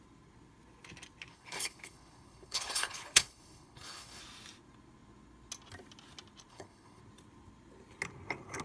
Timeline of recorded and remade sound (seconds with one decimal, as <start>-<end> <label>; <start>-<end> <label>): 0.0-1.3 recorded; 1.3-4.2 remade; 4.2-6.5 recorded; 6.5-7.0 remade; 7.0-8.6 recorded